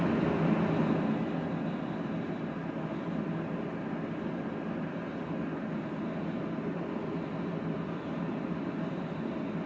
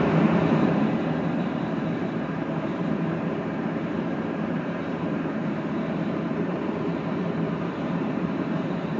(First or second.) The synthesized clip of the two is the second